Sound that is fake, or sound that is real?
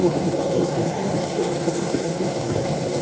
fake